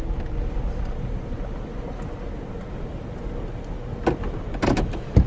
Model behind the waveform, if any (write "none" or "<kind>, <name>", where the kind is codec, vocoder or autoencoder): none